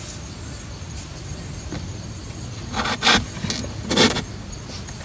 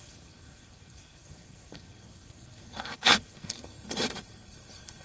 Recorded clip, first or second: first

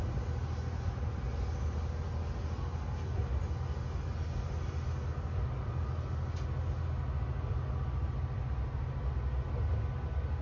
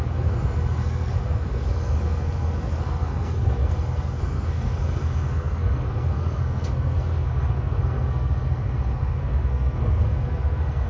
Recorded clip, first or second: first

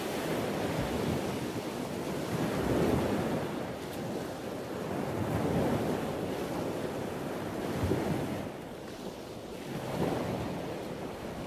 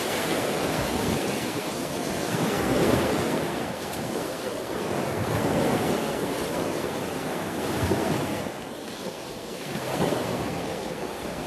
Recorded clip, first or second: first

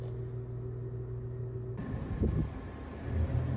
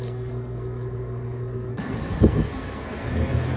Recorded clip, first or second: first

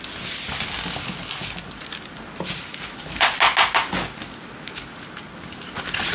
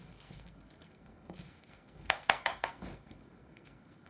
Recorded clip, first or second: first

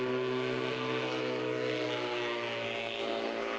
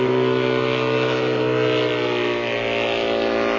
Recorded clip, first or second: second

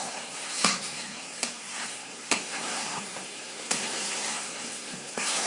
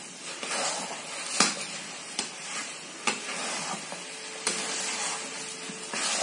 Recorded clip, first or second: second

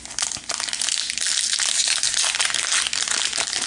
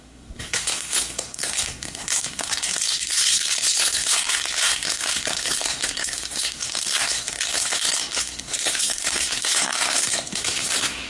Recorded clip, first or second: first